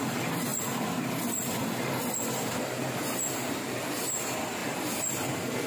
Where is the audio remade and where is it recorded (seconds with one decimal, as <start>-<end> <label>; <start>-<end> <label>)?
0.0-4.6 recorded; 4.6-5.3 remade; 5.3-5.7 recorded